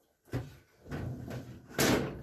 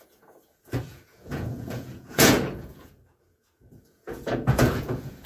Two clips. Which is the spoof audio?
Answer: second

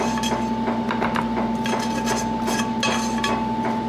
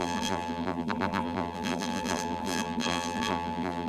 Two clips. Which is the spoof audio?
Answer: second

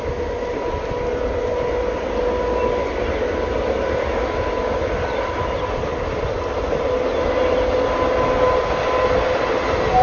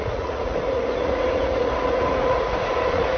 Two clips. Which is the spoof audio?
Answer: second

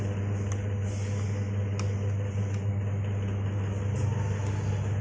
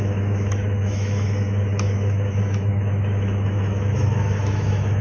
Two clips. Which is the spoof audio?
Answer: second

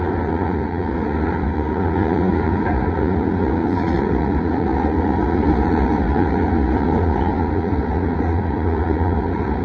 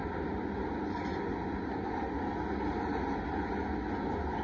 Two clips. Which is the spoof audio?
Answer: first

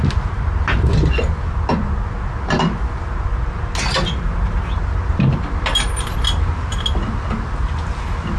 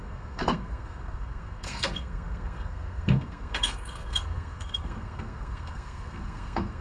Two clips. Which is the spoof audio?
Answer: second